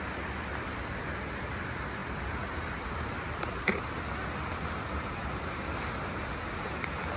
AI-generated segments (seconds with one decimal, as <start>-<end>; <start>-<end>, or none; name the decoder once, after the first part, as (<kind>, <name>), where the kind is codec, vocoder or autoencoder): none